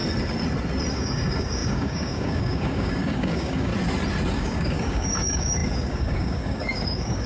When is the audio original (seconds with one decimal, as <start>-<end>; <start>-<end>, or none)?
0.0-0.9; 3.7-4.3